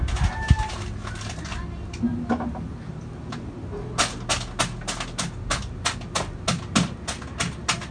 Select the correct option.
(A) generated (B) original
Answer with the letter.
B